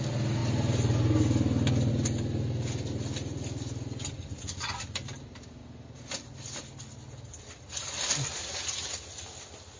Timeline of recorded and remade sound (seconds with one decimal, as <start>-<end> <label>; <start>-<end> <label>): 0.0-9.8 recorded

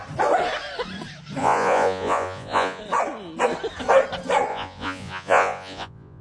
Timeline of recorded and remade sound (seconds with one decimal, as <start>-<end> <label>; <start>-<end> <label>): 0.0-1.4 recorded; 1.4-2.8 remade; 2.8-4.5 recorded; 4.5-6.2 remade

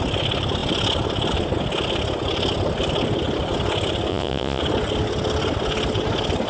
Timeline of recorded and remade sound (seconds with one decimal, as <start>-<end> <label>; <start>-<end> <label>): 0.0-4.1 recorded; 4.1-4.6 remade; 4.6-6.5 recorded

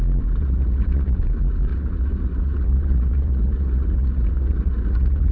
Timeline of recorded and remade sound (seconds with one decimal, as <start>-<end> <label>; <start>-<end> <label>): 0.0-0.4 recorded; 0.4-1.2 remade; 1.2-1.7 recorded; 1.7-5.3 remade

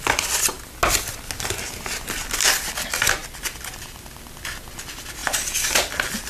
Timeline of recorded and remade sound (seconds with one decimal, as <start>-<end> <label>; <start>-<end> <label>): 0.0-5.2 recorded; 5.2-6.3 remade